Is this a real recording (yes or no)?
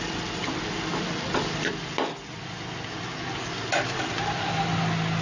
yes